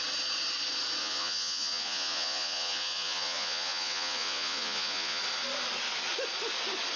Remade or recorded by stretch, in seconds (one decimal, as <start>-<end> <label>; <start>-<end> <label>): 0.0-1.0 recorded; 1.0-5.2 remade; 5.2-7.0 recorded